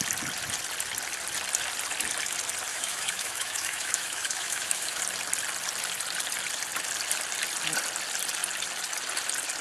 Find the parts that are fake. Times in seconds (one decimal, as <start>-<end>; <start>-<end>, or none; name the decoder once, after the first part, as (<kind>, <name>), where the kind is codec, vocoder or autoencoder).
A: 2.7-5.0 (autoencoder, DAC-VAE)